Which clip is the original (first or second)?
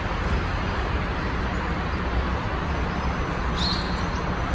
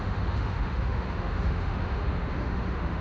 first